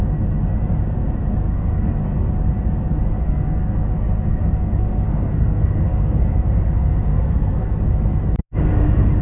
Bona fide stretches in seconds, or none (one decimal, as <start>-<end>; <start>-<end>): 0.0-1.5; 2.3-3.2; 7.8-9.2